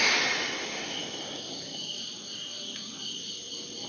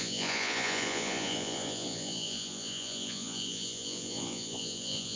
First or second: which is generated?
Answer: second